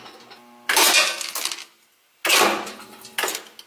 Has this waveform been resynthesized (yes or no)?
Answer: no